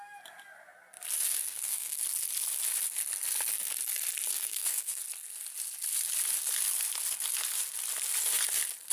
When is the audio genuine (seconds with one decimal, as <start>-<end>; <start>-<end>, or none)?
0.0-1.4; 2.0-4.3; 5.0-8.9